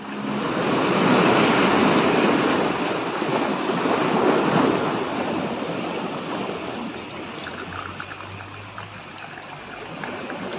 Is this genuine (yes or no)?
yes